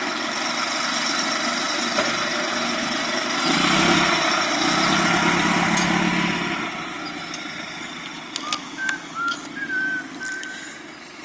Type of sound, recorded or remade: recorded